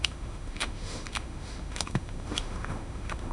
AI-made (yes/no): yes